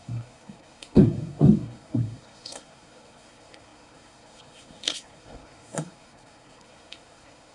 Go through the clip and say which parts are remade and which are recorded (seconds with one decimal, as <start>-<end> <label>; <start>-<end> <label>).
0.0-7.5 remade

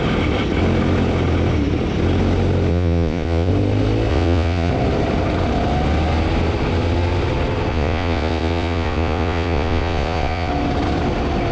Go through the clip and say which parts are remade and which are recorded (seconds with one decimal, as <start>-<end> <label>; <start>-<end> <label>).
0.0-2.7 recorded; 2.7-3.5 remade; 3.5-4.1 recorded; 4.1-4.7 remade; 4.7-7.7 recorded; 7.7-10.5 remade; 10.5-11.5 recorded

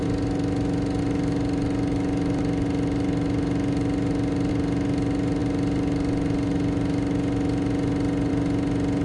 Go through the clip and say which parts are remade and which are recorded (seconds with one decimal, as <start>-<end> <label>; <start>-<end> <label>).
0.0-9.0 recorded

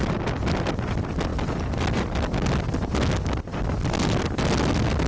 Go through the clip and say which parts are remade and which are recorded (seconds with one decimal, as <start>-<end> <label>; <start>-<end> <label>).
0.0-5.1 recorded

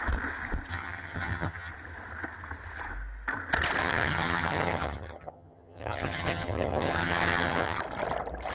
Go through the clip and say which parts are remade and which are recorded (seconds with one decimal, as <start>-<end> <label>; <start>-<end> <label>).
0.0-0.7 recorded; 0.7-1.7 remade; 1.7-3.8 recorded; 3.8-7.8 remade; 7.8-8.5 recorded

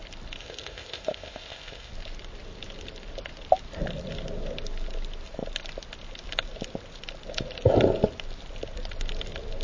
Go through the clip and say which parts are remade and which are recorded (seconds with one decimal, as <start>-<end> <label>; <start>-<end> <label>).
0.0-0.4 recorded; 0.4-1.9 remade; 1.9-9.6 recorded